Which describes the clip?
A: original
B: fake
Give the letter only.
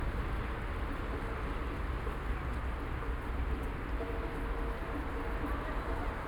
A